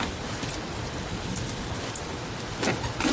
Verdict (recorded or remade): recorded